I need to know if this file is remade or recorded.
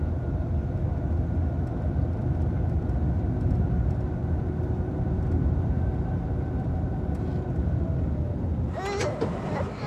recorded